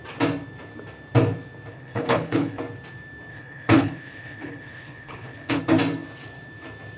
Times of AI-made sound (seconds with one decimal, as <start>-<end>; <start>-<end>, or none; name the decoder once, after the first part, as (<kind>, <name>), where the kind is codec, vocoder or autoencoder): 1.7-2.6 (codec, HILCodec); 3.3-5.6